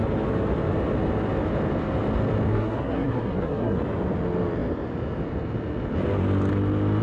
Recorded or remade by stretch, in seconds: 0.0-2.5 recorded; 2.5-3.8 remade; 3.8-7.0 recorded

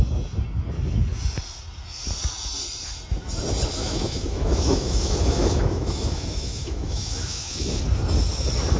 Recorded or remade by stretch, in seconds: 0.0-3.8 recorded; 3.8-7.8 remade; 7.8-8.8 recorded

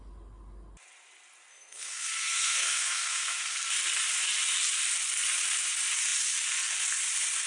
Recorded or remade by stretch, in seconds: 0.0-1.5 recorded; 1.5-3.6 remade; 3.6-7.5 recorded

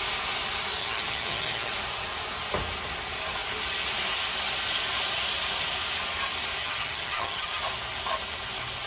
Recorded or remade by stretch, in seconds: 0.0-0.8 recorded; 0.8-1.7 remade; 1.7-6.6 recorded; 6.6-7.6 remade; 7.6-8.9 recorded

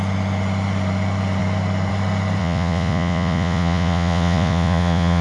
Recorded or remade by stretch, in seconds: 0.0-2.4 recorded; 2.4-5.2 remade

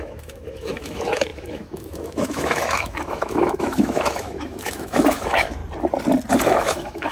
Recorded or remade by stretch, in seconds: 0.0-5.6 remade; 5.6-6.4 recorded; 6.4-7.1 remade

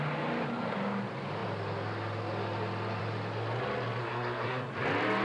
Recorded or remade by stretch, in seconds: 0.0-4.0 recorded; 4.0-4.7 remade; 4.7-5.2 recorded